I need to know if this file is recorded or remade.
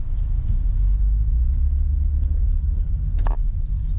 recorded